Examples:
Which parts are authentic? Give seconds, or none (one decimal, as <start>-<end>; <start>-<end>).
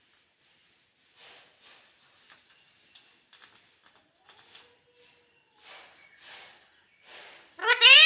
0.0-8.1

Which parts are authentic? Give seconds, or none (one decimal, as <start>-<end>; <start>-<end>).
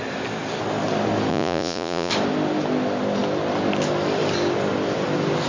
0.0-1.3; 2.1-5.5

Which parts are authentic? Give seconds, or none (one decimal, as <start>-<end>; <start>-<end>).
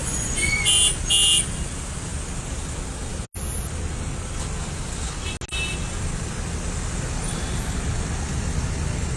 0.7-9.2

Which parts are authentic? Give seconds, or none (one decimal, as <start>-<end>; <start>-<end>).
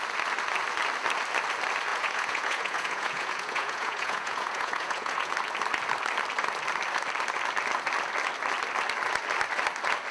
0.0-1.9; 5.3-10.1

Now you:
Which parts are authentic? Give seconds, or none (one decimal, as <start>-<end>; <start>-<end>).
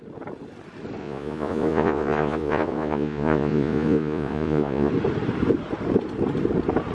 0.0-1.0; 4.9-6.9